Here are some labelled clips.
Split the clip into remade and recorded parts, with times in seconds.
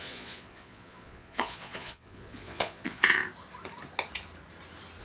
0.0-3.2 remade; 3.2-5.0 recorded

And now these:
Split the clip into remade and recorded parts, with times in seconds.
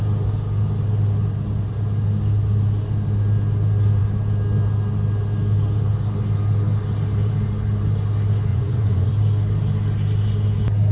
0.0-8.5 recorded; 8.5-9.1 remade; 9.1-10.9 recorded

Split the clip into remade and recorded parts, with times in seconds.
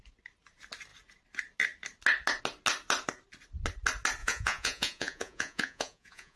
0.0-4.2 recorded; 4.2-6.4 remade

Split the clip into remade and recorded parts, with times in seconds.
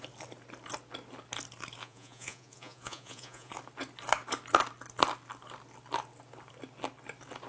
0.0-1.8 recorded; 1.8-3.5 remade; 3.5-7.5 recorded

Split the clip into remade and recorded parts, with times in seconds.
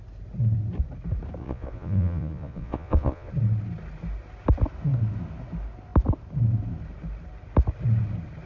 0.0-1.4 recorded; 1.4-3.3 remade; 3.3-8.5 recorded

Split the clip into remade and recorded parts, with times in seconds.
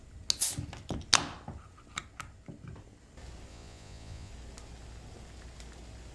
0.0-3.5 recorded; 3.5-4.3 remade; 4.3-6.1 recorded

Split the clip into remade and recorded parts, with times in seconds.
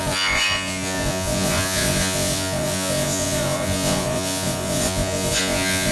0.0-5.9 remade